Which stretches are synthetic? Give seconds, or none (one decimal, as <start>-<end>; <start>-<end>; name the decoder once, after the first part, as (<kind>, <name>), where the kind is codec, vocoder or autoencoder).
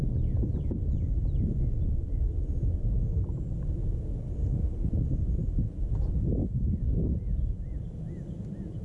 6.4-7.1 (codec, DAC)